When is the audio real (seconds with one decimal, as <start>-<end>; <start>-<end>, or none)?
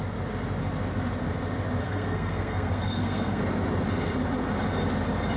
0.0-1.8; 3.4-5.4